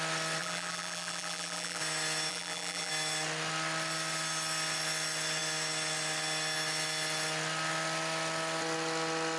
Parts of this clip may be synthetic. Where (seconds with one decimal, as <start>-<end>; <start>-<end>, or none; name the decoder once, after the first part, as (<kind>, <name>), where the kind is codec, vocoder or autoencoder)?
0.4-1.8 (vocoder, BigVGAN v2); 2.3-2.9